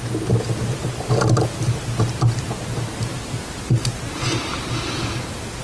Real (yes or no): yes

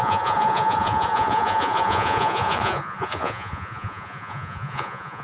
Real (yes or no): no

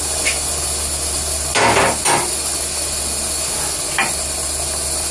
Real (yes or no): yes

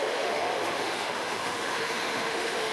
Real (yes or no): no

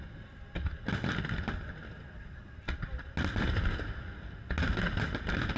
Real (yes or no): yes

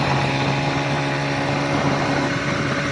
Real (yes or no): no